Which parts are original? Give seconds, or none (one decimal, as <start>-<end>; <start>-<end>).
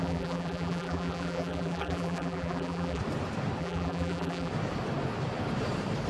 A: 3.0-3.6; 4.5-6.1